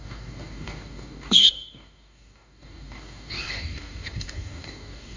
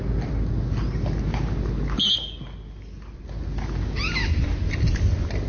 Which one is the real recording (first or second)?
second